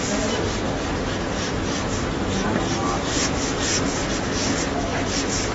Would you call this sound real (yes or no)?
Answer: yes